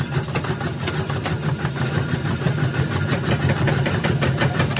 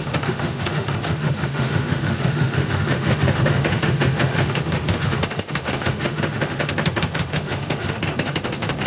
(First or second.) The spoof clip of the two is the second